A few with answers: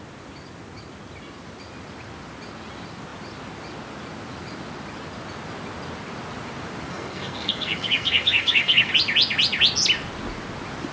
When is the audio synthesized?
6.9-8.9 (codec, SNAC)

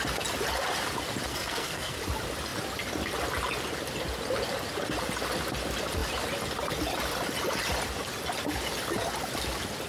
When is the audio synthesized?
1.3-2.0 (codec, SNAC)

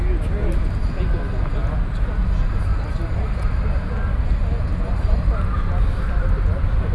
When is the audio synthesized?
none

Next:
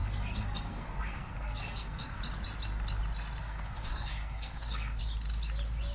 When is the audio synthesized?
0.0-2.2 (codec, SNAC); 3.4-5.0

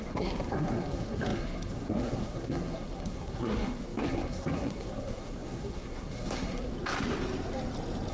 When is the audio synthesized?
0.0-6.7 (codec, SNAC)